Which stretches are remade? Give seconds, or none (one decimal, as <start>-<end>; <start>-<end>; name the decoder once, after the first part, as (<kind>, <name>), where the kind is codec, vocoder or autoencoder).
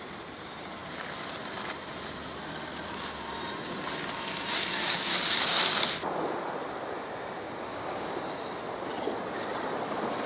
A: 7.7-8.2 (codec, DAC)